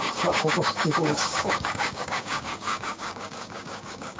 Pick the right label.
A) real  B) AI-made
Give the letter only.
B